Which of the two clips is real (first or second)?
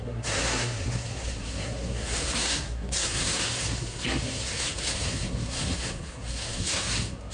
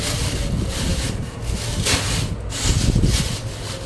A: second